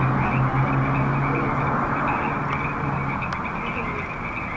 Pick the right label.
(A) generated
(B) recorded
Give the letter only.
B